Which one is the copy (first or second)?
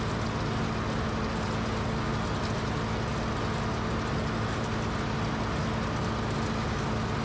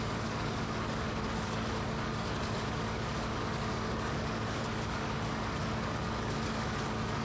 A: second